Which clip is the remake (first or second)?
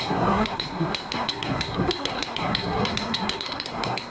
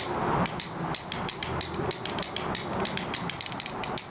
first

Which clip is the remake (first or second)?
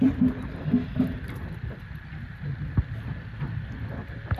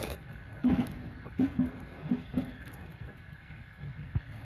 second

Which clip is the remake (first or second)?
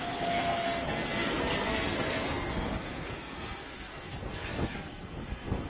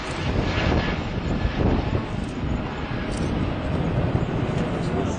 first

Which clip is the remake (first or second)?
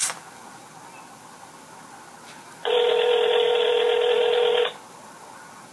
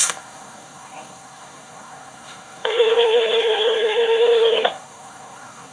second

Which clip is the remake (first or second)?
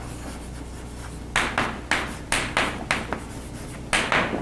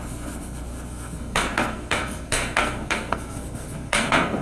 second